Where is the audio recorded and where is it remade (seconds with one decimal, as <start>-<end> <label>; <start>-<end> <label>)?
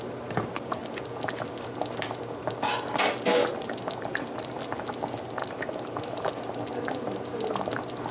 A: 0.0-3.5 recorded; 3.5-4.6 remade; 4.6-5.4 recorded; 5.4-6.3 remade; 6.3-8.1 recorded